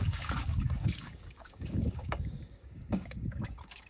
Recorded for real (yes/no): no